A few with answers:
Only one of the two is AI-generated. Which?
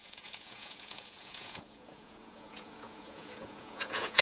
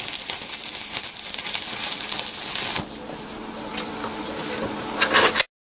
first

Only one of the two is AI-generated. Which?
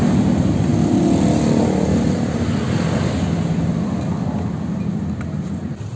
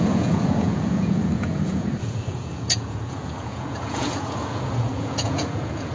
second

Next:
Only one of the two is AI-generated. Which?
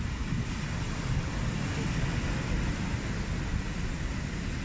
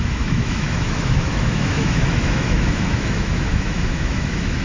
second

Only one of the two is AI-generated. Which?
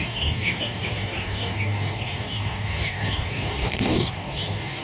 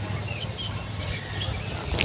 first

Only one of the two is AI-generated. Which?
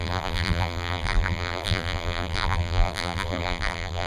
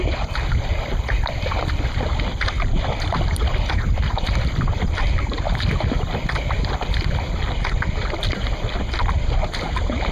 first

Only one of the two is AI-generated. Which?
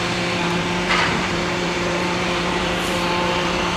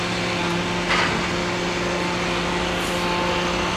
first